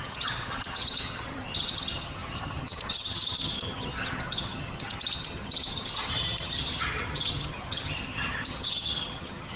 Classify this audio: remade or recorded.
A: remade